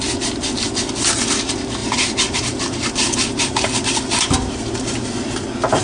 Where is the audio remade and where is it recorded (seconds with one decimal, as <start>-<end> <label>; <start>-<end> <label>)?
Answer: 0.0-1.8 recorded; 1.8-5.1 remade; 5.1-5.8 recorded